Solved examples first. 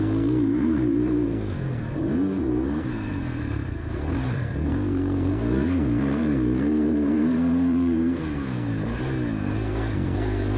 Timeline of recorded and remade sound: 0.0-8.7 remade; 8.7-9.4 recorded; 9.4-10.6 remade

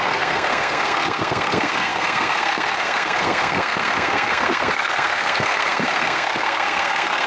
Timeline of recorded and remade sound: 0.0-7.3 remade

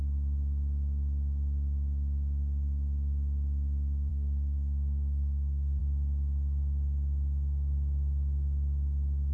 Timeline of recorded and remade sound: 0.0-4.1 recorded; 4.1-5.8 remade; 5.8-9.3 recorded

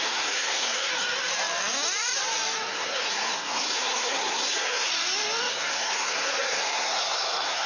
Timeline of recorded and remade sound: 0.0-0.9 remade; 0.9-2.7 recorded; 2.7-4.9 remade; 4.9-5.5 recorded; 5.5-7.7 remade

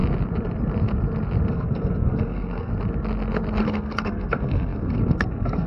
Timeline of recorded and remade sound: 0.0-1.5 recorded; 1.5-2.7 remade; 2.7-3.6 recorded; 3.6-5.7 remade

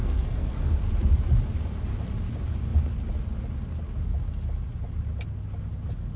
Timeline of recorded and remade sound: 0.0-0.8 remade; 0.8-6.2 recorded

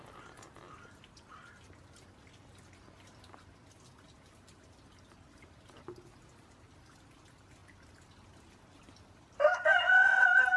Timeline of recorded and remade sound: 0.0-10.6 recorded